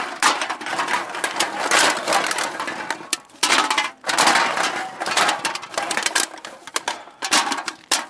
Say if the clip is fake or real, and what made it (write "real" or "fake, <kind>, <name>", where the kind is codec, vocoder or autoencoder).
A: real